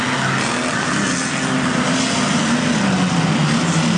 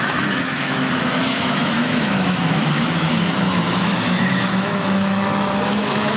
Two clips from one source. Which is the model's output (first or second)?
second